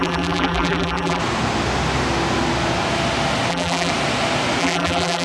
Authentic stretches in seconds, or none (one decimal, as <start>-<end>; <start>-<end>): 1.2-3.5; 3.9-4.6